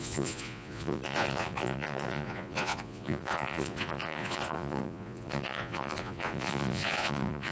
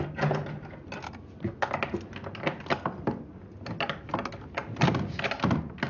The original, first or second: second